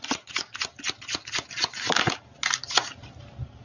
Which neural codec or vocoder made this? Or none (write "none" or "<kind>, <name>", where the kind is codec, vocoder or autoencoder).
none